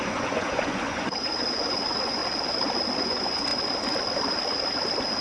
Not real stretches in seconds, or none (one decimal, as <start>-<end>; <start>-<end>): 0.0-2.2; 3.0-3.5